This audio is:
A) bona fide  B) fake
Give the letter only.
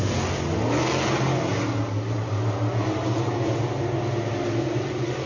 A